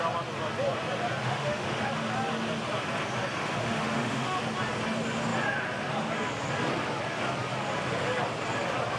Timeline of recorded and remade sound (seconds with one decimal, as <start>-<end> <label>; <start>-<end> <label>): 0.0-1.2 recorded; 1.2-1.9 remade; 1.9-3.4 recorded; 3.4-4.4 remade; 4.4-9.0 recorded